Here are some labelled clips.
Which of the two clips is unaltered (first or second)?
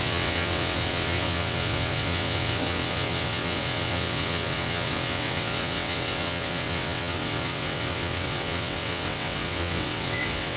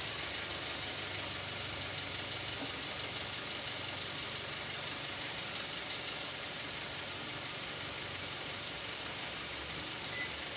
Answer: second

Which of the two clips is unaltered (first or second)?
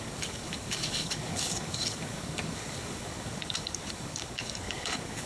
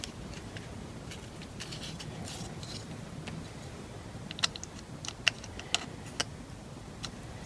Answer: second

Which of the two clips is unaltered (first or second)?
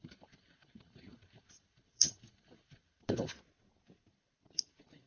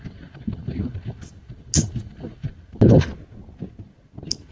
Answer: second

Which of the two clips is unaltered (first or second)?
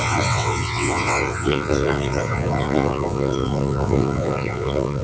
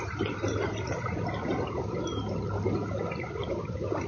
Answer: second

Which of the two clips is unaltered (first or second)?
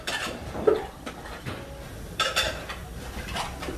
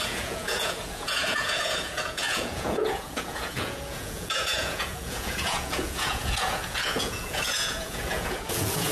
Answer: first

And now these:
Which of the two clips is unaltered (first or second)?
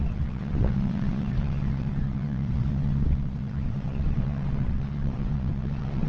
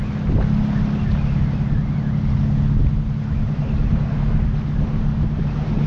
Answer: second